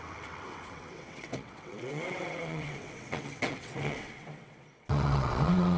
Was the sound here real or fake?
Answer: fake